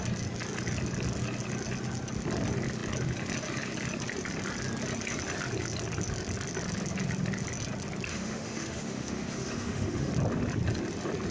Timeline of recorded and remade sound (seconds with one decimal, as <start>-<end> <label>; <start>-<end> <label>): 0.0-8.1 recorded; 8.1-10.1 remade; 10.1-11.3 recorded